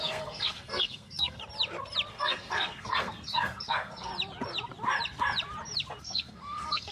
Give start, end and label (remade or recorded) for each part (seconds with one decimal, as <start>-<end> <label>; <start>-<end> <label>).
0.0-1.4 remade; 1.4-2.1 recorded; 2.1-4.1 remade; 4.1-6.0 recorded; 6.0-6.9 remade